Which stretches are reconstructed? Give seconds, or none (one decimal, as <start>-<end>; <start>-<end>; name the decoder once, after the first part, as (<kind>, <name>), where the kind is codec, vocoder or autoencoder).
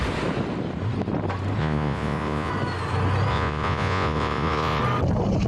1.6-2.5 (vocoder, Vocos); 3.3-4.8